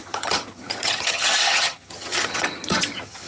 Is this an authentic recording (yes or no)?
no